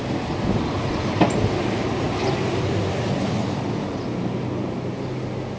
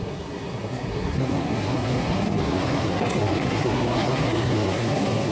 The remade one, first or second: second